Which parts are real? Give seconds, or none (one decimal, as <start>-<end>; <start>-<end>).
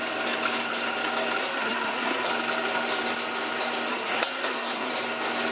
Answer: 0.0-1.4; 2.3-3.9; 4.9-5.5